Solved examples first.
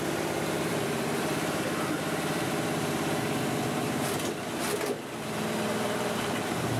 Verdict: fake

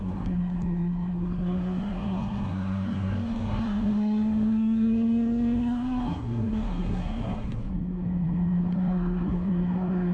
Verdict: fake